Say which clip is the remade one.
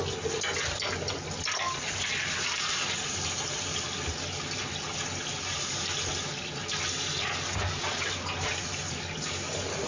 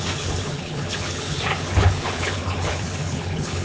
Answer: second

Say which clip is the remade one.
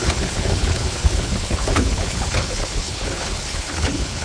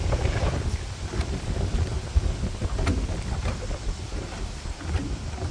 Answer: first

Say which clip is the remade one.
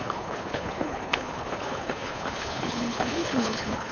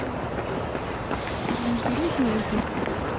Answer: first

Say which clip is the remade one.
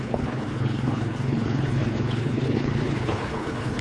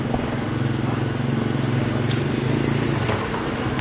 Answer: first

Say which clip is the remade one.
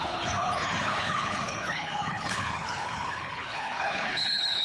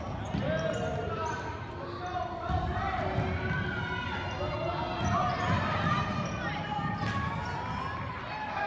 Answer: first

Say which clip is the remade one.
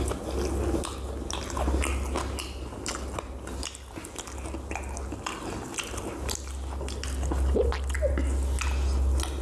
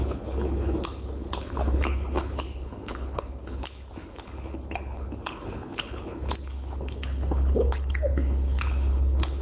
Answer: second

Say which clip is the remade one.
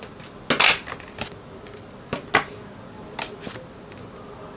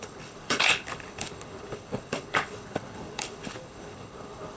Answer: second